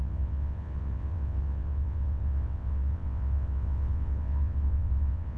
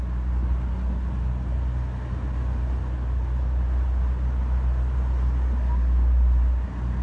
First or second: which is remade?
first